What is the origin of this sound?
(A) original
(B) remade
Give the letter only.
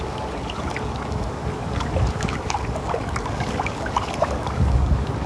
B